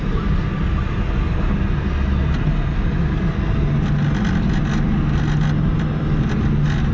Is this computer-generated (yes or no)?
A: no